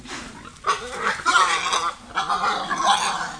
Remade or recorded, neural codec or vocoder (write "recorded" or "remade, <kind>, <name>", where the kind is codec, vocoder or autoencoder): recorded